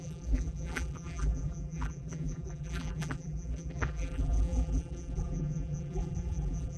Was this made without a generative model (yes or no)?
no